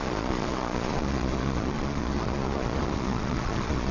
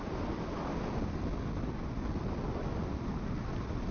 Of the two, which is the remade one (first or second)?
first